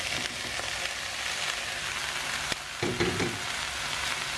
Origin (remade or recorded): recorded